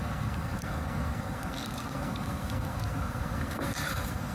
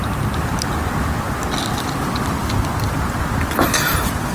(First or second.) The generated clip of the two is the first